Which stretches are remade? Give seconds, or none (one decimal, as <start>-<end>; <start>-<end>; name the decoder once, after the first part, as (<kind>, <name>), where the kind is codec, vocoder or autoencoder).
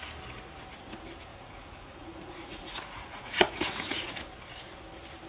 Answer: 1.3-4.2 (vocoder, Vocos)